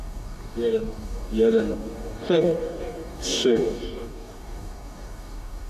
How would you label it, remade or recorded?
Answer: remade